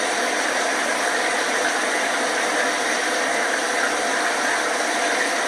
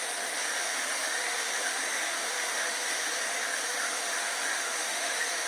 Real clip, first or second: first